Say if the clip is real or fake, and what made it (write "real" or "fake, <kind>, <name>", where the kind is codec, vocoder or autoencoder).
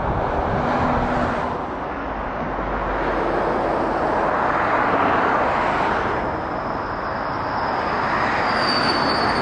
real